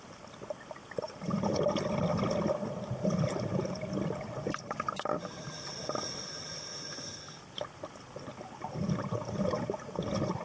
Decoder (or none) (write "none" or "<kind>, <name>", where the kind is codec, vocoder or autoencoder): none